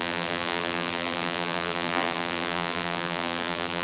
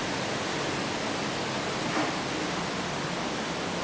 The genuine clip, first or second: second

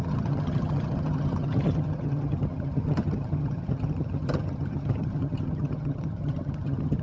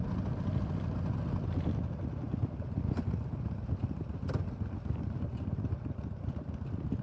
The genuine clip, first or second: second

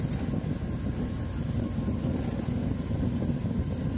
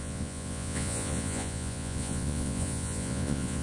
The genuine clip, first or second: first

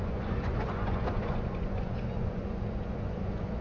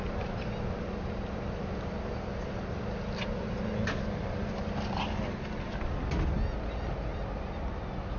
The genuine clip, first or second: second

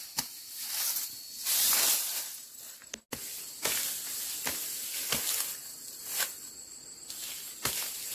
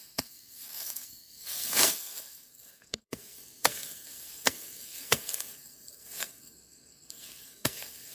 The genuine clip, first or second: first